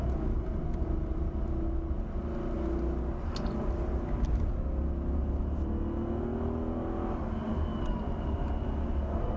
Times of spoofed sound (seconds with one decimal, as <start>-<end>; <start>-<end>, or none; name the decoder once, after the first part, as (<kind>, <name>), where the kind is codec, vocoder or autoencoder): none